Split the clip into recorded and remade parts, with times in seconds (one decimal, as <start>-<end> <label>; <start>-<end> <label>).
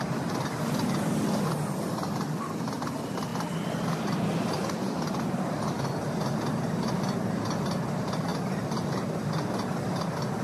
0.0-10.4 recorded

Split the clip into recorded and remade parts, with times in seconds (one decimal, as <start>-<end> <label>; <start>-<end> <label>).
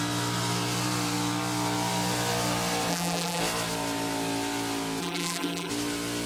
0.0-2.9 recorded; 2.9-3.4 remade; 3.4-5.0 recorded; 5.0-5.7 remade; 5.7-6.3 recorded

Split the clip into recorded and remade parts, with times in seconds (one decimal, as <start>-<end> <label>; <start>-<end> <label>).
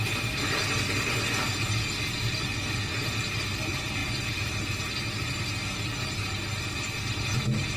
0.0-7.8 recorded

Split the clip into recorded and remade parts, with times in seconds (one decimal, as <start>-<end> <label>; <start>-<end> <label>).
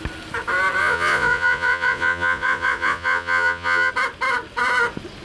0.0-0.8 recorded; 0.8-3.9 remade; 3.9-5.2 recorded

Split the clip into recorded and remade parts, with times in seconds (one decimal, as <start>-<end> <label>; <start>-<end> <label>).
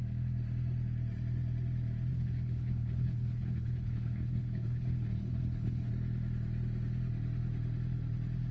0.0-2.1 recorded; 2.1-5.9 remade; 5.9-8.5 recorded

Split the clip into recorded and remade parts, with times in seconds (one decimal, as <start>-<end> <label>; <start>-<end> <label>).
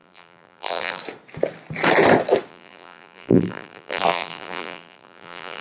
0.0-1.0 remade; 1.0-2.5 recorded; 2.5-5.6 remade